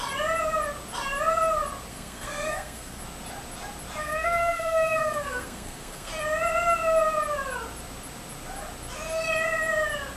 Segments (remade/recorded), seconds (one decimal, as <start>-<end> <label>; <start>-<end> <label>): 0.0-1.9 recorded; 1.9-3.0 remade; 3.0-4.0 recorded; 4.0-6.1 remade; 6.1-10.2 recorded